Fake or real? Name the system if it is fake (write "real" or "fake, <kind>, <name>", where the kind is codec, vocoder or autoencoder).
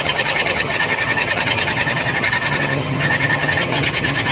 fake, vocoder, HiFi-GAN